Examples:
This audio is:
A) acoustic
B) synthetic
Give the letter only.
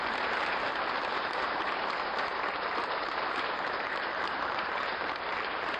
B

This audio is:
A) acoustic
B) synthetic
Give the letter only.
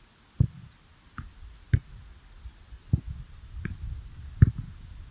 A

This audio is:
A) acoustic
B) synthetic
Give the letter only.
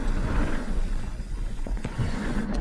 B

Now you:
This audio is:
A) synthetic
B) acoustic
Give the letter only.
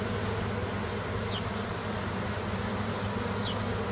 B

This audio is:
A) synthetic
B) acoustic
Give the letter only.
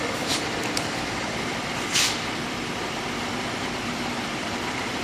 A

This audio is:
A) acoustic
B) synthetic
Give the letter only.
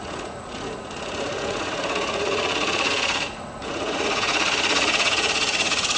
B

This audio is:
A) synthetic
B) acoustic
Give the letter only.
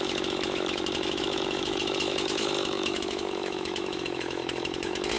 A